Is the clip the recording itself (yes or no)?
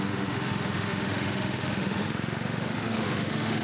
no